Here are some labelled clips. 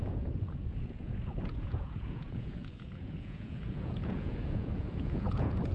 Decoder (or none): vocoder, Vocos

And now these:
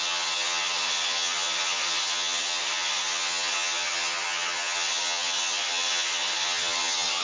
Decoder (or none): vocoder, HiFi-GAN